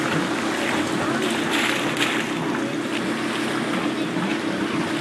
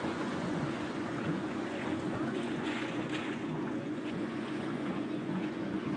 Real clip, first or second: first